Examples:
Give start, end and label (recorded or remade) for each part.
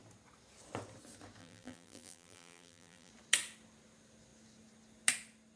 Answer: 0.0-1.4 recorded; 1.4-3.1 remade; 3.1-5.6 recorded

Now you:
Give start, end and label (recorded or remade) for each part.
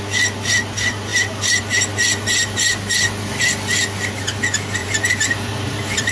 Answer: 0.0-4.8 recorded; 4.8-6.1 remade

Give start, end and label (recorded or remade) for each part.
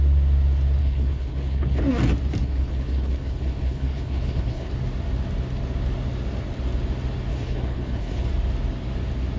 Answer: 0.0-0.8 recorded; 0.8-1.8 remade; 1.8-2.4 recorded; 2.4-4.7 remade; 4.7-7.3 recorded; 7.3-8.3 remade; 8.3-9.4 recorded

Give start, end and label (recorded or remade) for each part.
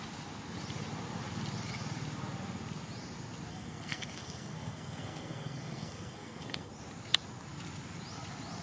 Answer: 0.0-3.5 recorded; 3.5-6.7 remade; 6.7-8.6 recorded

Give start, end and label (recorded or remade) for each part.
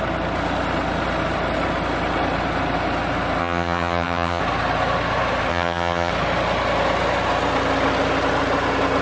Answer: 0.0-3.4 recorded; 3.4-4.4 remade; 4.4-5.5 recorded; 5.5-6.1 remade; 6.1-9.0 recorded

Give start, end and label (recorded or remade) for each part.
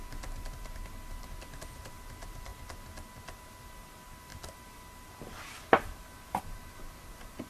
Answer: 0.0-2.5 remade; 2.5-3.7 recorded; 3.7-7.5 remade